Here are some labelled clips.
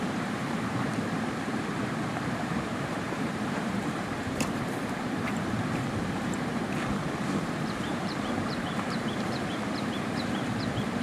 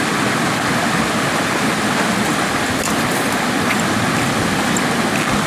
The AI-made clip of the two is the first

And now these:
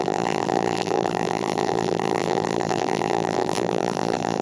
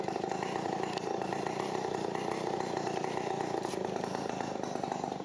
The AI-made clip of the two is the first